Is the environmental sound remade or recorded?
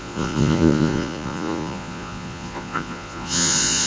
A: remade